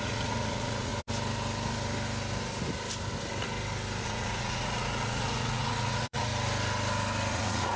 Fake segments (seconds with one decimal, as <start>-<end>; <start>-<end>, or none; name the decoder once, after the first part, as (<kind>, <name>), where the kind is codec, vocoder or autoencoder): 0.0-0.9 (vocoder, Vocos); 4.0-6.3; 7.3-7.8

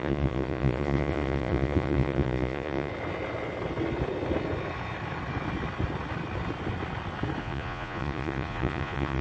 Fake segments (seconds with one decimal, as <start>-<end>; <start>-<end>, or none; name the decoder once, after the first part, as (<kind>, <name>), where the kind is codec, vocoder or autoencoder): 0.0-2.9 (vocoder, Vocos); 7.4-9.2

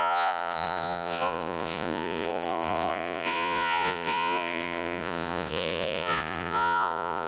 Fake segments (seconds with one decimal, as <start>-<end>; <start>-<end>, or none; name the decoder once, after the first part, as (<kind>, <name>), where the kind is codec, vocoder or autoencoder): 0.0-7.3 (vocoder, Vocos)